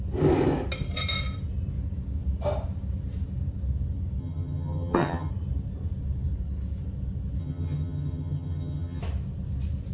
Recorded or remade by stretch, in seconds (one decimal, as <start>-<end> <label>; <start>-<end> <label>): 0.0-4.2 recorded; 4.2-5.3 remade; 5.3-7.4 recorded; 7.4-9.0 remade; 9.0-9.9 recorded